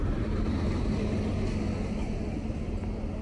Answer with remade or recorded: recorded